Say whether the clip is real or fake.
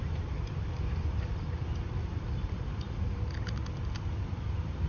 real